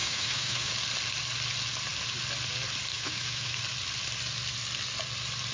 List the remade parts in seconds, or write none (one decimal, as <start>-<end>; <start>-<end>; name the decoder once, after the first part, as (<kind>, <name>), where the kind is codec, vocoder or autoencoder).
0.0-0.7 (autoencoder, DAC-VAE); 2.9-3.6

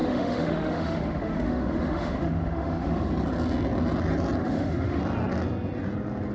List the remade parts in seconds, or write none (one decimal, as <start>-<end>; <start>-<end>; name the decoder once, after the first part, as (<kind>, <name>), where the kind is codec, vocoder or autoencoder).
0.0-3.1 (autoencoder, DAC-VAE); 4.4-5.0

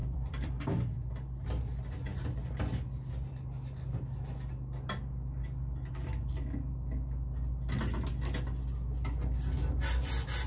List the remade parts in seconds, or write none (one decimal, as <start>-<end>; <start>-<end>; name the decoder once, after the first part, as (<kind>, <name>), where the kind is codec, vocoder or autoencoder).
0.0-0.6 (vocoder, BigVGAN v2)

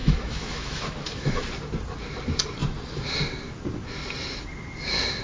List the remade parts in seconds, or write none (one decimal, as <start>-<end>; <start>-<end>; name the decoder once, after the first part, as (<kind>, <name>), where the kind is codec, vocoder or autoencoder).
0.0-1.4 (autoencoder, DAC-VAE)

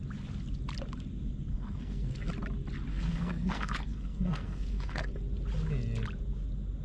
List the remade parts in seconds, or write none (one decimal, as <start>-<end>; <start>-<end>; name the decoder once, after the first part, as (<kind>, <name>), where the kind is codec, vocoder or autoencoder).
1.5-2.3 (codec, SNAC); 2.9-5.2

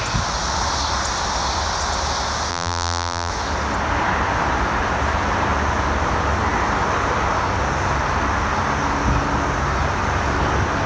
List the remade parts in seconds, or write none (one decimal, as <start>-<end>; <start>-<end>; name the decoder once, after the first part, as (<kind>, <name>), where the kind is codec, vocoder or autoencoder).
2.5-3.3 (vocoder, BigVGAN v2)

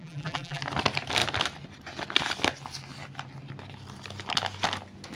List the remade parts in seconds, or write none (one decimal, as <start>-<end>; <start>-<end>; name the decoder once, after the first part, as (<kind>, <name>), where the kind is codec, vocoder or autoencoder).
0.0-0.6 (vocoder, BigVGAN v2)